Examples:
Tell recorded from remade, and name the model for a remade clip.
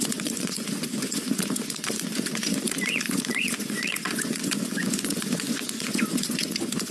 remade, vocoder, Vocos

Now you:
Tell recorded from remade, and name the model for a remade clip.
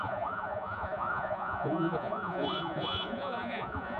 remade, vocoder, Vocos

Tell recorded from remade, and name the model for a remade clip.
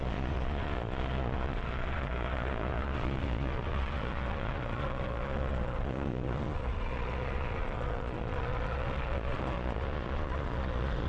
remade, vocoder, Vocos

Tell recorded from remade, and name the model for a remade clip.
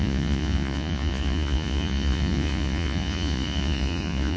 remade, vocoder, Vocos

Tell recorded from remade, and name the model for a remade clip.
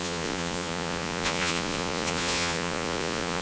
remade, vocoder, Vocos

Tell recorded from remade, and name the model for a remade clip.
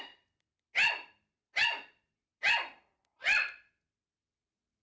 recorded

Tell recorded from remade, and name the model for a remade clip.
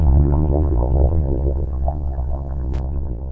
remade, vocoder, Vocos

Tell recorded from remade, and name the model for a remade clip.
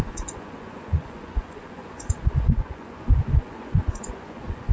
remade, vocoder, Vocos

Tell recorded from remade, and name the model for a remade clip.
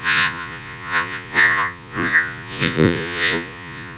remade, vocoder, Vocos